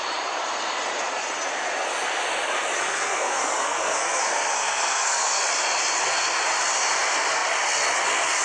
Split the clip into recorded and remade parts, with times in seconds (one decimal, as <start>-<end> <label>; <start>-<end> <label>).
0.0-2.8 recorded; 2.8-5.4 remade; 5.4-8.4 recorded